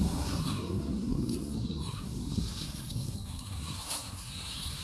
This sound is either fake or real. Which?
fake